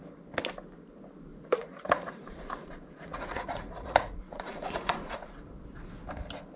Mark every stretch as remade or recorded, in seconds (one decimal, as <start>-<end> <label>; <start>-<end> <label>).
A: 0.0-1.3 recorded; 1.3-5.3 remade; 5.3-6.6 recorded